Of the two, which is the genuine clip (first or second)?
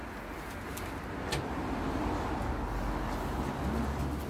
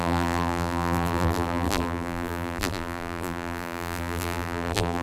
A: first